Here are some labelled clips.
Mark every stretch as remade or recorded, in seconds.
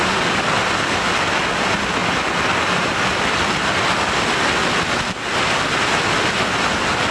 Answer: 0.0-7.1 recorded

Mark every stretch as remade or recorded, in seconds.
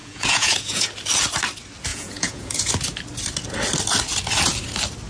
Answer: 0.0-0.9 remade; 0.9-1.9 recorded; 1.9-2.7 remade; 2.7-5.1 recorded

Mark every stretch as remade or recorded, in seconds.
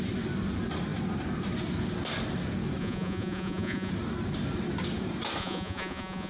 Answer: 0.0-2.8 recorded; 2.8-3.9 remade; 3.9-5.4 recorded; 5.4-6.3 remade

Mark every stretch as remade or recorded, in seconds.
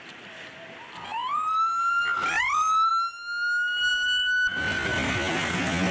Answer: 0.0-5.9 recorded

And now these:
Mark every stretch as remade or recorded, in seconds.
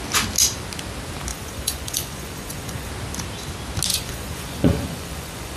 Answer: 0.0-1.3 recorded; 1.3-2.9 remade; 2.9-3.9 recorded; 3.9-5.6 remade